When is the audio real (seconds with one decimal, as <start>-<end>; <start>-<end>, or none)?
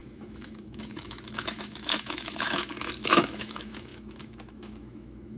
none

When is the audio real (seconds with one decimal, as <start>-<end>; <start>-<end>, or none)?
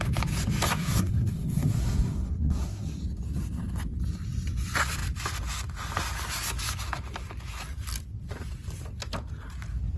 0.0-0.7; 3.0-10.0